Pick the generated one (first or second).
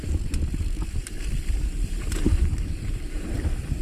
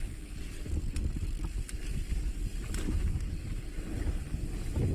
first